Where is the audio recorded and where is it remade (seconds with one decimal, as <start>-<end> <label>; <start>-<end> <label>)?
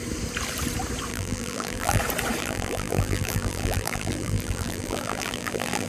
0.0-1.1 recorded; 1.1-2.0 remade; 2.0-2.4 recorded; 2.4-5.9 remade